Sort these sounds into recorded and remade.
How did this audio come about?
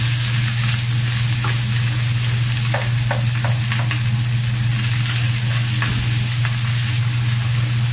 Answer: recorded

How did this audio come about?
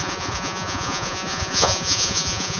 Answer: remade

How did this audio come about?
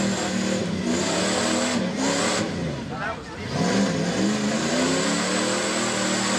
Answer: recorded